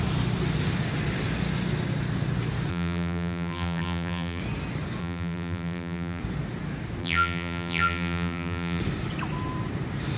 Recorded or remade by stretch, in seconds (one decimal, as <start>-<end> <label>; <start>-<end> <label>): 0.0-2.7 recorded; 2.7-4.4 remade; 4.4-5.0 recorded; 5.0-6.2 remade; 6.2-7.0 recorded; 7.0-8.8 remade; 8.8-10.2 recorded